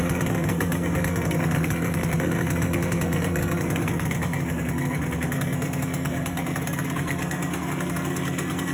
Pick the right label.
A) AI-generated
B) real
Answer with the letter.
A